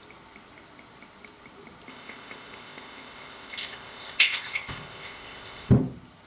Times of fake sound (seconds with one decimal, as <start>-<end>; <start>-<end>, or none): 1.9-5.7